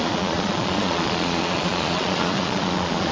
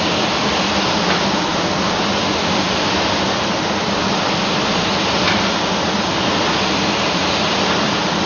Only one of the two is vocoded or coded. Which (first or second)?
first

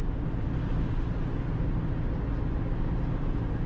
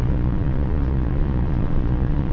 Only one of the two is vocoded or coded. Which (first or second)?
second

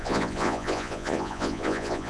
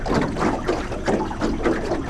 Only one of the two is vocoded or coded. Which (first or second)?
first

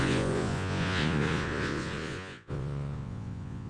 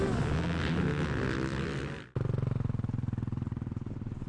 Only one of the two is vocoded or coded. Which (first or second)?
first